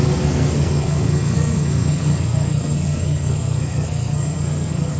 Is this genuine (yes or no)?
no